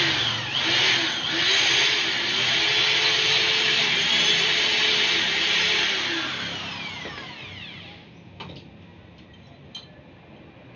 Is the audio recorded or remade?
recorded